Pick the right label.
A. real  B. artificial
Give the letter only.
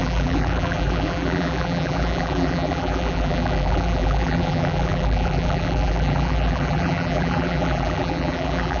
B